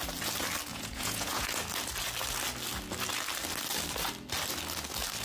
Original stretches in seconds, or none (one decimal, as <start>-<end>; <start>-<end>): 0.0-0.7; 1.5-5.2